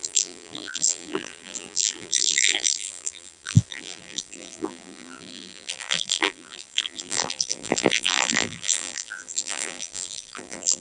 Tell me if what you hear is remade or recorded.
remade